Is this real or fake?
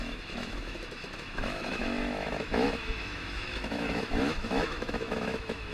fake